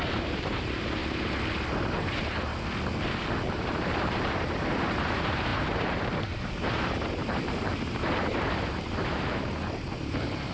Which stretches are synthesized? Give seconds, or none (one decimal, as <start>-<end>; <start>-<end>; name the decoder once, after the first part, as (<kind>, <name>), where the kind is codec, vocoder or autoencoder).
0.0-1.0 (vocoder, BigVGAN v2); 1.9-2.5; 3.5-10.5